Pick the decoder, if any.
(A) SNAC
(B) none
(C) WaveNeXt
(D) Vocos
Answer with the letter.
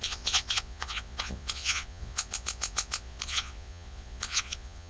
D